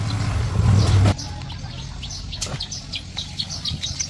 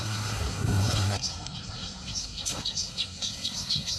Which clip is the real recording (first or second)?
first